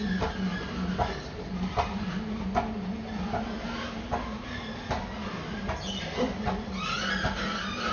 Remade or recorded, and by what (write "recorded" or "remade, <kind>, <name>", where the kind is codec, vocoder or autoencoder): recorded